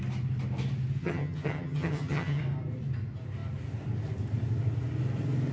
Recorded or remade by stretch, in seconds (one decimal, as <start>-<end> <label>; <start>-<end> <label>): 0.0-1.0 recorded; 1.0-2.4 remade; 2.4-5.5 recorded